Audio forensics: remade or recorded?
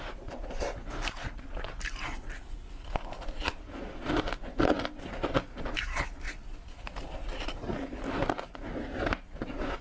recorded